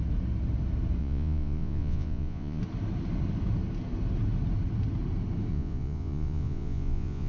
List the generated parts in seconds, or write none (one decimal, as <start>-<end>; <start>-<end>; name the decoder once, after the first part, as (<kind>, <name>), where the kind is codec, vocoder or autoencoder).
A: 1.0-2.6 (vocoder, Vocos); 5.5-7.3